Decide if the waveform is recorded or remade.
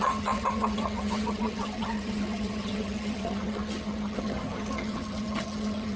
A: remade